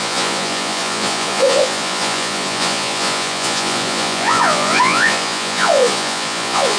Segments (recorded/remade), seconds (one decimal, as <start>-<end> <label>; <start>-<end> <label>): 0.0-6.8 remade